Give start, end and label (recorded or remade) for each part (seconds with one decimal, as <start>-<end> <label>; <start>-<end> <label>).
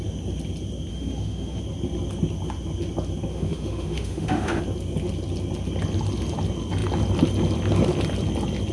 0.0-0.9 recorded; 0.9-1.6 remade; 1.6-3.3 recorded; 3.3-4.6 remade; 4.6-8.7 recorded